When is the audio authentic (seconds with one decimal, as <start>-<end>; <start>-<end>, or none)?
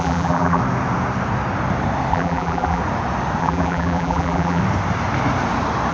0.6-2.1; 2.8-3.4; 4.6-5.9